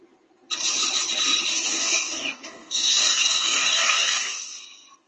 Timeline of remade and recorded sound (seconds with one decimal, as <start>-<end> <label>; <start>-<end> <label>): 0.0-1.5 recorded; 1.5-4.6 remade; 4.6-5.1 recorded